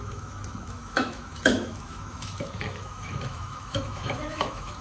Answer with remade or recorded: remade